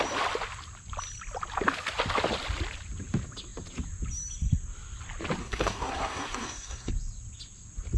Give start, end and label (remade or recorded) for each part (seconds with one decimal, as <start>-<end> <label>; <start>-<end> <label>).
0.0-5.4 recorded; 5.4-6.9 remade; 6.9-8.0 recorded